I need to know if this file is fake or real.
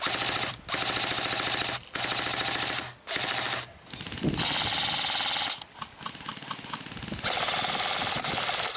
real